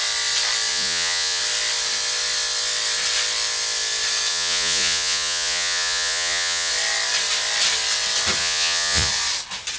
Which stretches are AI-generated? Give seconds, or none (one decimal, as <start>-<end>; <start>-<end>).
0.7-1.4; 4.3-6.7; 8.4-9.1